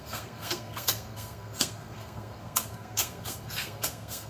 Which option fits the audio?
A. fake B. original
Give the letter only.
A